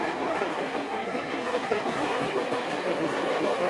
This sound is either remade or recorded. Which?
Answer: remade